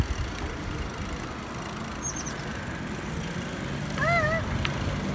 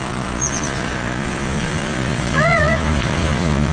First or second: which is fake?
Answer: second